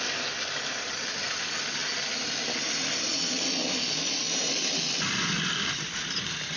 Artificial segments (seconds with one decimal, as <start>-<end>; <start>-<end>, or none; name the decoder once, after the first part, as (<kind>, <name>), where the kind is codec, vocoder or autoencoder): none